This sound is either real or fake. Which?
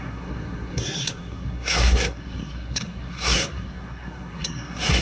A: fake